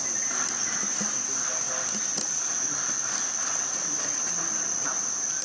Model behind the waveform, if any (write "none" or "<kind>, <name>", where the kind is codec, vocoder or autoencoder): none